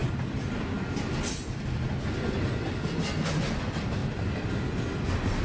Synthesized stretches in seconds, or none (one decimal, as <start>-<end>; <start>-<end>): none